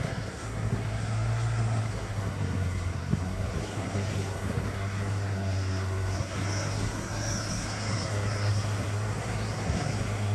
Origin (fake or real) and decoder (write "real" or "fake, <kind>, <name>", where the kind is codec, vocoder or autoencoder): fake, codec, SNAC